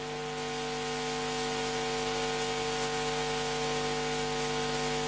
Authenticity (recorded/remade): recorded